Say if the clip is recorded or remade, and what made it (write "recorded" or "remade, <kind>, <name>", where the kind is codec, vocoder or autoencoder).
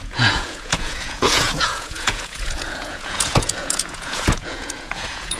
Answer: remade, vocoder, Vocos